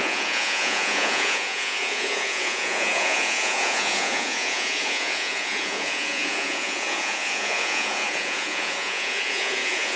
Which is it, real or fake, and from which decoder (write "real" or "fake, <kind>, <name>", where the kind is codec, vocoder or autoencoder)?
fake, vocoder, Vocos